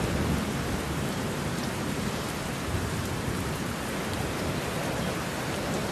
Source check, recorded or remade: remade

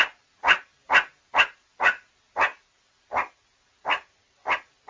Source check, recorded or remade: recorded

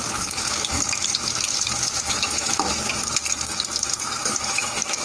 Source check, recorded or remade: remade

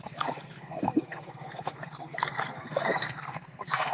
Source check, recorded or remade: remade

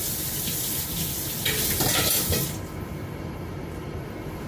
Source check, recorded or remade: recorded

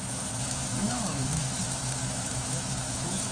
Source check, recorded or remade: remade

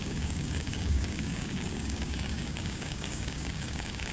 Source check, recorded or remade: remade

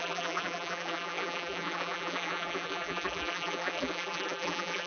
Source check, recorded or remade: remade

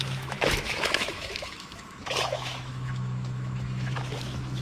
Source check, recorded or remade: remade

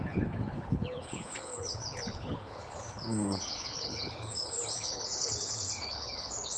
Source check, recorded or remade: remade